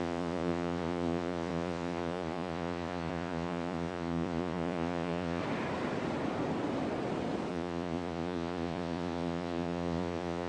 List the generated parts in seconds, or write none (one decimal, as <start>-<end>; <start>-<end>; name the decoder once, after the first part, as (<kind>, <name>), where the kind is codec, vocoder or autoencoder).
0.0-5.4 (vocoder, Vocos); 7.5-10.5